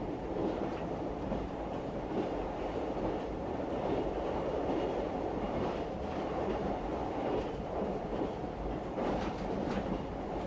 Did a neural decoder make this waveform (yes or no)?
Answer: yes